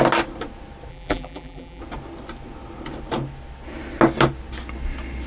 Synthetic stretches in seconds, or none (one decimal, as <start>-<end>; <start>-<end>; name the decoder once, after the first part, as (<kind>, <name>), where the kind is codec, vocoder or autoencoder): 0.9-1.8 (vocoder, BigVGAN v2)